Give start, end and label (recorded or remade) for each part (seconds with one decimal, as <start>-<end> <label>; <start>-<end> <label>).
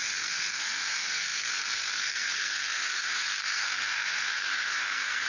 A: 0.0-5.3 remade